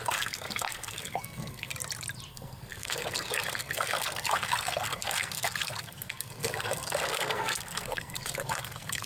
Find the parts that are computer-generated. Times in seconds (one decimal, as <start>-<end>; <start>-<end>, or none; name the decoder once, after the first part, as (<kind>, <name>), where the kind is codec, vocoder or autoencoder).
0.0-1.7 (codec, SNAC); 2.3-9.1